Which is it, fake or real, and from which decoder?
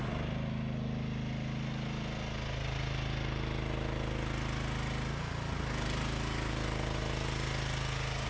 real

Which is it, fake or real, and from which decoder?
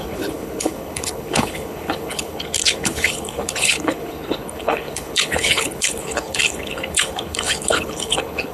fake, codec, HILCodec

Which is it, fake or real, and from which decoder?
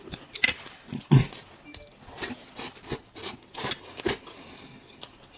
real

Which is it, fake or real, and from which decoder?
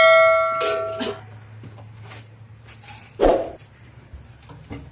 real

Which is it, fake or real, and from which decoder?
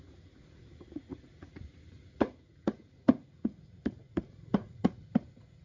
fake, vocoder, Vocos